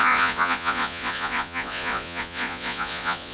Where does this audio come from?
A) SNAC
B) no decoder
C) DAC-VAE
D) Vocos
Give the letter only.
D